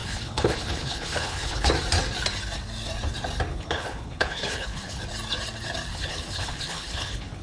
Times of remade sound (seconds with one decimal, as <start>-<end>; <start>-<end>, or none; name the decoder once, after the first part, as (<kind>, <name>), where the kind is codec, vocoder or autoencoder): 0.0-1.7 (codec, HILCodec); 3.5-5.0; 5.9-7.4